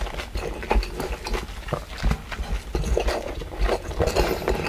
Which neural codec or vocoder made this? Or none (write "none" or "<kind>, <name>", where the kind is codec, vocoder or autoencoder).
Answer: none